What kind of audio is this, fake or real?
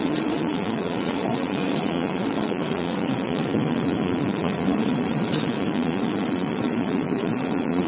fake